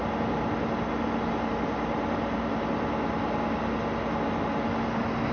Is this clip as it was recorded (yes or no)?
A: yes